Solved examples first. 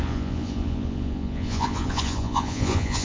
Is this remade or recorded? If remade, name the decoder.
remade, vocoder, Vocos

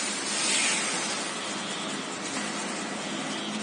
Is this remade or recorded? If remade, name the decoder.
recorded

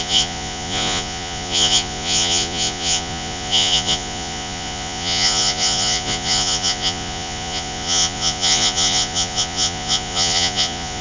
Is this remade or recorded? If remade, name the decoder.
remade, vocoder, Vocos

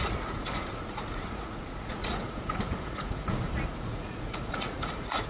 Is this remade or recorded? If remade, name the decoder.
remade, vocoder, Vocos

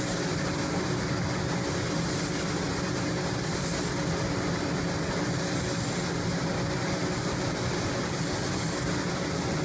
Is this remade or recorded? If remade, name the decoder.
recorded